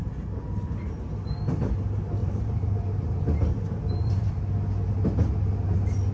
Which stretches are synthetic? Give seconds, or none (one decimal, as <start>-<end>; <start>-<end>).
2.2-4.3